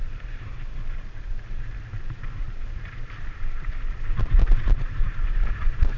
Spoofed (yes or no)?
yes